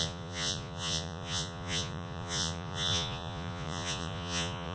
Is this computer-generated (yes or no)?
yes